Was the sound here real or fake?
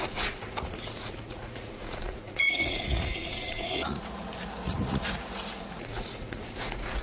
fake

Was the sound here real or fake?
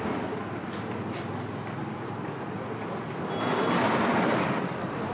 real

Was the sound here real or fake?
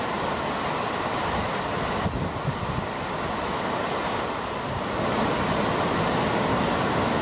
real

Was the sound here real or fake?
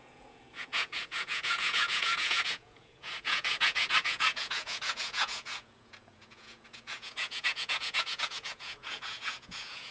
fake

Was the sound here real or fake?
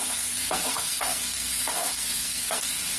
fake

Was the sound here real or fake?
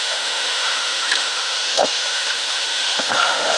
fake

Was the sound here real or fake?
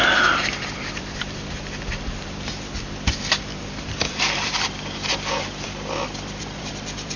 fake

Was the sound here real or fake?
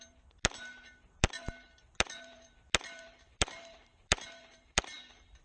fake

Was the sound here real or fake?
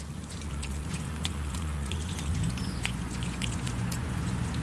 fake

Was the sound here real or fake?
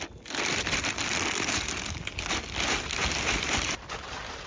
real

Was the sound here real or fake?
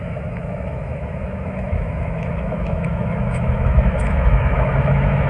fake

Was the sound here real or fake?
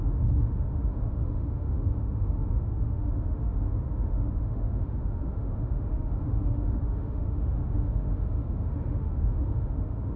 fake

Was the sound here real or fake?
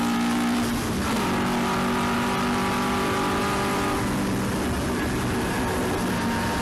real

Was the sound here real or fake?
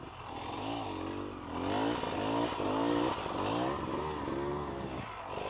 real